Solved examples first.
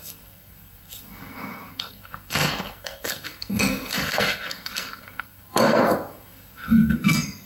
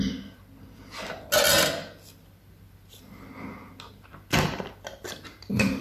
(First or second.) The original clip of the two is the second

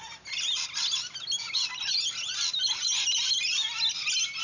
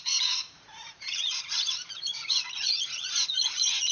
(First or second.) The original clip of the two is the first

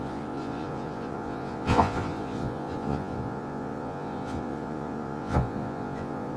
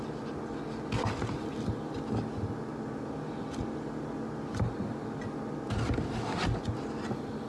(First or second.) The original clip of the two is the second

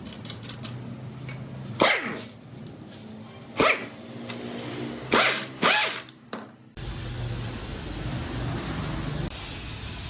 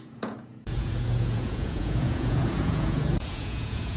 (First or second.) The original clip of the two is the first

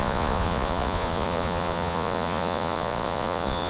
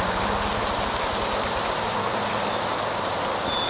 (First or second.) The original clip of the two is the second